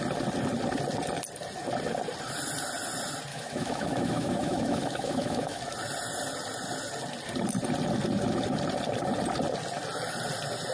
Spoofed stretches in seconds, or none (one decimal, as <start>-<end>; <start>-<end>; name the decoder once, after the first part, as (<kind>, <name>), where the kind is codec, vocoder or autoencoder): 3.3-5.6 (autoencoder, DAC-VAE)